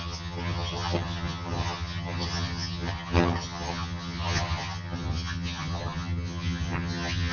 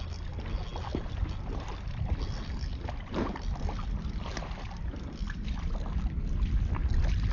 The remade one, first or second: first